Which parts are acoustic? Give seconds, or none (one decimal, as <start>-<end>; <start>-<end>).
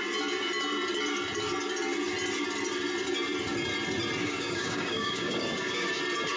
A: 0.0-4.2; 6.0-6.4